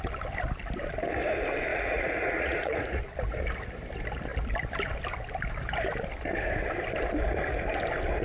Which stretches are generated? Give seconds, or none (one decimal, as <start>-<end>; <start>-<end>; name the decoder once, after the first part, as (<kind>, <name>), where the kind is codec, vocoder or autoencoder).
1.7-3.0 (vocoder, Vocos)